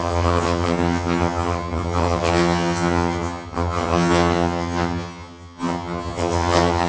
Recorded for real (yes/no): no